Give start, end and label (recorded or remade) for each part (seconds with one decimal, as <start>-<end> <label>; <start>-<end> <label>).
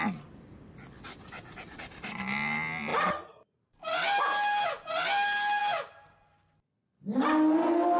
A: 0.0-2.9 recorded; 2.9-4.2 remade; 4.2-5.6 recorded; 5.6-7.0 remade; 7.0-8.0 recorded